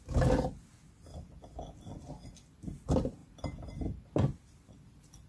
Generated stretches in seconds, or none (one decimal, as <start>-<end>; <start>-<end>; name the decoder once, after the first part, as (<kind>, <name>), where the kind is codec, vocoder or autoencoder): none